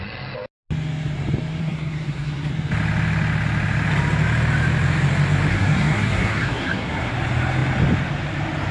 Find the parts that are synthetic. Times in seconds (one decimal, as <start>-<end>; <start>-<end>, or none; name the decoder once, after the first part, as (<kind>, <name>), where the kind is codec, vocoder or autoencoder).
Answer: 1.6-2.5 (codec, SNAC); 5.5-7.1

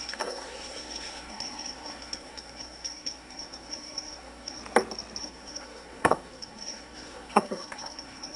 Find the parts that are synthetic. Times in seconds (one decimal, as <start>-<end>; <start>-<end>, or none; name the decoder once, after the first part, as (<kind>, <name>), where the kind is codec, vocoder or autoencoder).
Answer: 0.0-4.6 (codec, SNAC); 5.2-8.4

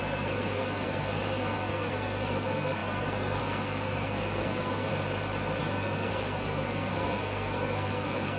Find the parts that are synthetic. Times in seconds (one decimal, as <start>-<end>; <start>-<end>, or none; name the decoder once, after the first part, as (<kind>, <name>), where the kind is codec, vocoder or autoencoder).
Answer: 0.0-4.9 (codec, SNAC); 5.6-8.4

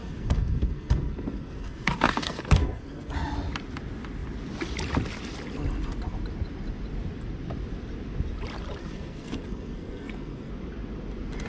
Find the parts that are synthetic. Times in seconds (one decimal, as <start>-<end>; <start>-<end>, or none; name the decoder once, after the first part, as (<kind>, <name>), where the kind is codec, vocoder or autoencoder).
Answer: 0.0-3.1 (codec, SNAC); 8.8-10.5

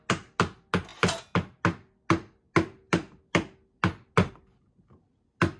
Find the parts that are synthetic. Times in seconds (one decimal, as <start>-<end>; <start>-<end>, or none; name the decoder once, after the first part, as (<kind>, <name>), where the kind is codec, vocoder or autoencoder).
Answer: none

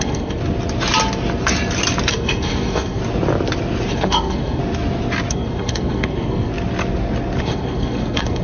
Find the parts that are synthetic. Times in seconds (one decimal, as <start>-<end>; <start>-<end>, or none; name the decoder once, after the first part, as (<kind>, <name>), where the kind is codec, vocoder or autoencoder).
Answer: 0.0-0.4 (codec, SNAC); 2.1-3.0; 3.9-4.6; 5.3-6.5; 7.4-8.4

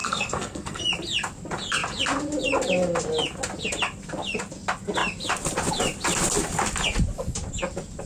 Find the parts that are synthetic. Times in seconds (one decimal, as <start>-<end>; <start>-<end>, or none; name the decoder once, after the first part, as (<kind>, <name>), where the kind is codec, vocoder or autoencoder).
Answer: 0.0-0.8 (codec, SNAC)

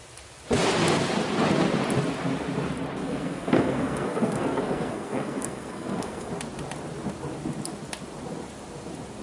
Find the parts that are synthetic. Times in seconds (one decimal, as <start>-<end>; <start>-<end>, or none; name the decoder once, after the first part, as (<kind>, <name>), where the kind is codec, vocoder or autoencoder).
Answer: 3.0-6.3 (codec, SNAC)